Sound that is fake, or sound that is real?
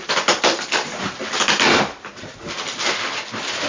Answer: real